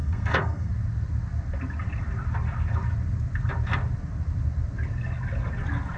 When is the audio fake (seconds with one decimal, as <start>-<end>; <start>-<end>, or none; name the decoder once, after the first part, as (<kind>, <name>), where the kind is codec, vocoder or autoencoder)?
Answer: 0.0-0.7 (codec, SNAC)